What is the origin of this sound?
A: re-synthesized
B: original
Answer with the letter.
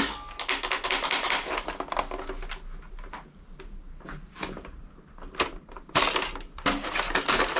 B